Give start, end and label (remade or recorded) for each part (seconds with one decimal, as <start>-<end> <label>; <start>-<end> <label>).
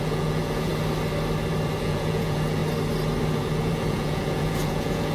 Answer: 0.0-0.7 remade; 0.7-1.8 recorded; 1.8-2.6 remade; 2.6-3.4 recorded; 3.4-5.1 remade